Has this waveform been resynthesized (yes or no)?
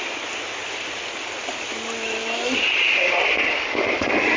no